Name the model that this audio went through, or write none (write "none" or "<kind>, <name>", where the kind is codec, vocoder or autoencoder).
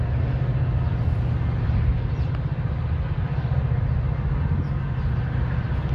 none